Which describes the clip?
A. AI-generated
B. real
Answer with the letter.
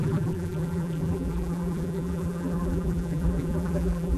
A